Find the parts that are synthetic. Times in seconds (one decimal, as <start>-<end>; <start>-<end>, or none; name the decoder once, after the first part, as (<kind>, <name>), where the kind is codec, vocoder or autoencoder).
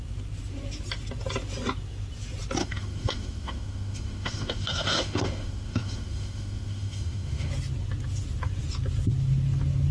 2.6-7.5 (autoencoder, DAC-VAE)